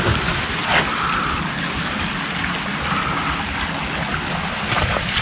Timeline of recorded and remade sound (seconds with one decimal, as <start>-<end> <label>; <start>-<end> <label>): 0.0-5.2 recorded